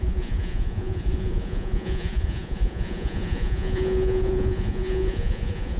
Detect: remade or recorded remade